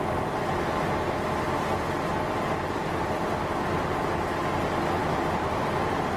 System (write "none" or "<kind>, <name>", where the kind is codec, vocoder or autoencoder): vocoder, BigVGAN v2